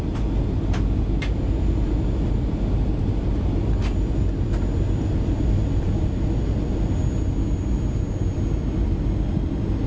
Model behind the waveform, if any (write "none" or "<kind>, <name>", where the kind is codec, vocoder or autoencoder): none